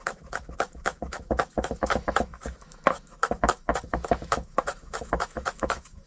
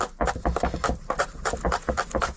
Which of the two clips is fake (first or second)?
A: first